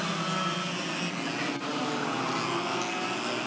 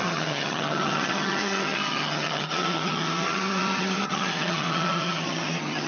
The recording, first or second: first